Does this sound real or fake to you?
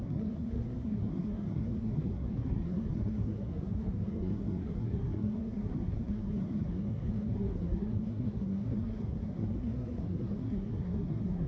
fake